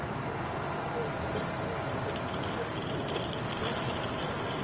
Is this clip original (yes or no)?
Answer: yes